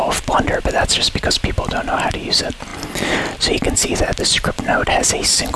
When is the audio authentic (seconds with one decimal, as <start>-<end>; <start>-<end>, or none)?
2.7-4.2